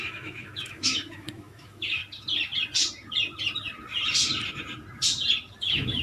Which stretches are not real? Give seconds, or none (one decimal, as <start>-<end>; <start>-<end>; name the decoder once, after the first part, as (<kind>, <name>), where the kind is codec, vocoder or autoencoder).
0.0-2.0 (autoencoder, DAC-VAE); 5.6-6.0

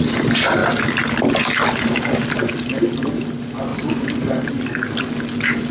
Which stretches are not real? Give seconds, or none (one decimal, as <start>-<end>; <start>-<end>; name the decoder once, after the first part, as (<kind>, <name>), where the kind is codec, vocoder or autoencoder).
none

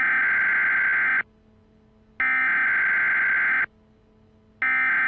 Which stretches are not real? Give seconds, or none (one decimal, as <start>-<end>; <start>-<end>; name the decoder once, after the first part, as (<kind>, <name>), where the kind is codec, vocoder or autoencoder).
none

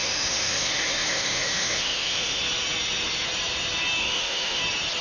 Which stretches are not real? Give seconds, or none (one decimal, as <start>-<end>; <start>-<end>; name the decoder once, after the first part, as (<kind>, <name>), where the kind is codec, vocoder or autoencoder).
0.0-2.4 (autoencoder, DAC-VAE); 4.0-4.6

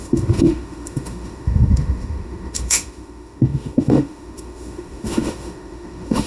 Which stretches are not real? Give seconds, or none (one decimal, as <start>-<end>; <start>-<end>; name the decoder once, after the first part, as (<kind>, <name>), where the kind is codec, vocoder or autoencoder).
0.0-6.3 (autoencoder, DAC-VAE)

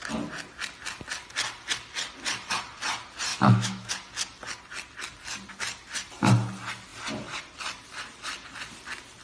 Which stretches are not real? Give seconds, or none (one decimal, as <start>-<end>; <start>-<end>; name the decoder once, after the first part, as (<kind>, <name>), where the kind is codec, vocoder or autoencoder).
3.3-3.9 (autoencoder, DAC-VAE)

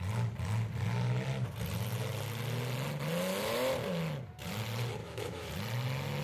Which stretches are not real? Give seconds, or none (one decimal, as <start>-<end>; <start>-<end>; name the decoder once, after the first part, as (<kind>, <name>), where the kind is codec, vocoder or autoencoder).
5.0-5.5 (autoencoder, DAC-VAE)